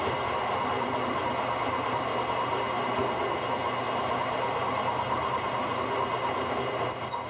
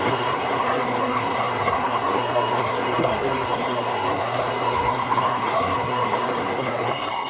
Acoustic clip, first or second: first